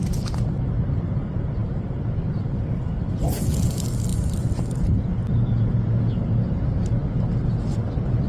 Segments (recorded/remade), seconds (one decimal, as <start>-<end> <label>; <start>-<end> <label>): 0.0-8.3 recorded